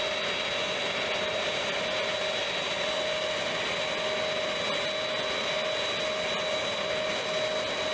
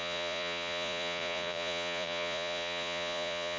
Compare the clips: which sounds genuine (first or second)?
first